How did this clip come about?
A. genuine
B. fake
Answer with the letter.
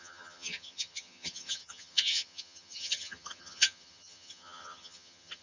B